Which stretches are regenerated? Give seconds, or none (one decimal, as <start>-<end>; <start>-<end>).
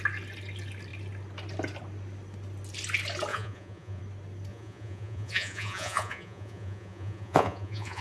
3.3-4.0; 4.5-8.0